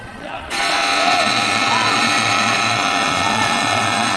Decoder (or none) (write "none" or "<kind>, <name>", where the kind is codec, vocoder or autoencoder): vocoder, Vocos